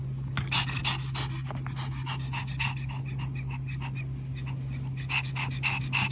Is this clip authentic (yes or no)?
yes